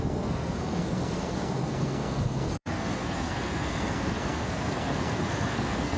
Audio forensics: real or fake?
fake